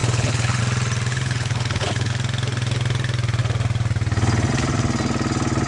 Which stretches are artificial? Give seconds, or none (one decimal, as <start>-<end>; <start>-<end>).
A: 0.0-0.6; 1.1-2.1